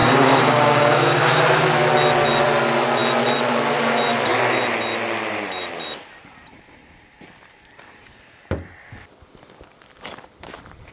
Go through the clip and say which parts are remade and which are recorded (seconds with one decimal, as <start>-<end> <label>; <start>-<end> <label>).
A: 0.0-1.4 remade; 1.4-10.9 recorded